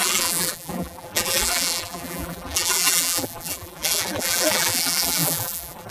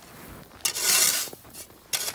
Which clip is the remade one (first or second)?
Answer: first